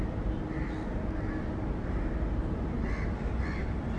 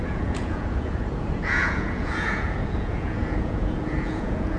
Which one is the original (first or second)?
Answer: first